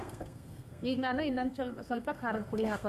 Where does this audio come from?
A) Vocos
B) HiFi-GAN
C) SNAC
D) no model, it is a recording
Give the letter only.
C